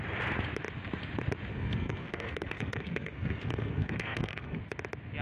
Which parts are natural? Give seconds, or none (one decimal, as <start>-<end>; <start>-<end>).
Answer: 0.0-1.5; 4.6-5.2

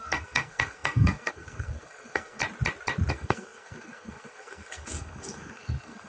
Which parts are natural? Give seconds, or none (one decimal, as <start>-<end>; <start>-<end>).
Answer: 2.4-3.1